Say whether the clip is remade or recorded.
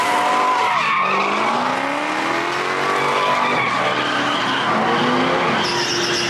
recorded